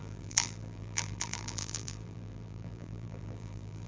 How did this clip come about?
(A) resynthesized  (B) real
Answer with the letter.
A